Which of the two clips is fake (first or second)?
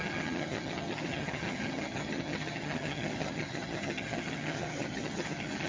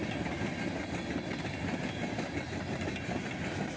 first